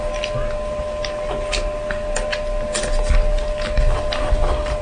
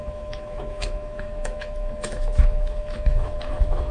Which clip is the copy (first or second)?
second